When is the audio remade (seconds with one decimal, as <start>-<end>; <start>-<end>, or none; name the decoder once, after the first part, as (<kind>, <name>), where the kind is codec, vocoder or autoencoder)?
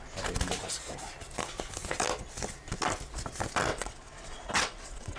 3.7-5.2 (vocoder, WaveNeXt)